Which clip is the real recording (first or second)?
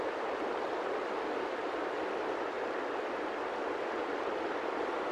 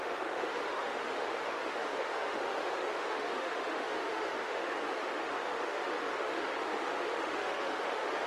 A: first